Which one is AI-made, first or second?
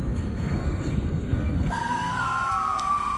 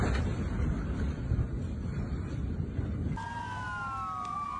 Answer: first